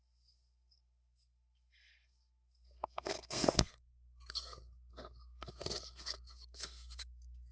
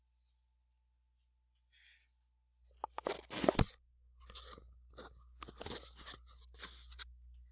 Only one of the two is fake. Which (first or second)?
first